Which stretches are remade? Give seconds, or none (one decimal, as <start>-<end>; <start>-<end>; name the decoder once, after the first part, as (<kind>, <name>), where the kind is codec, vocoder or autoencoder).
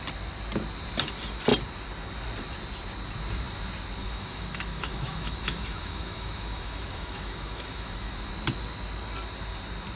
4.0-8.3 (autoencoder, DAC-VAE)